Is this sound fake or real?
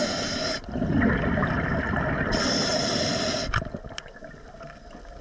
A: real